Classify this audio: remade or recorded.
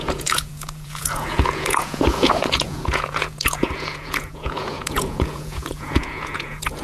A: remade